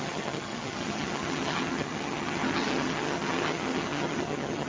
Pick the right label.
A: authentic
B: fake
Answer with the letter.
B